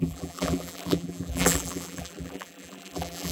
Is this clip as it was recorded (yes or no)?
no